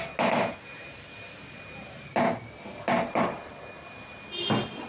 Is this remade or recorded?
recorded